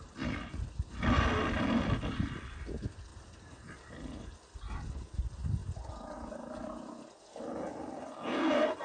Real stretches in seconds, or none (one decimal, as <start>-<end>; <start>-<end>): 0.0-8.8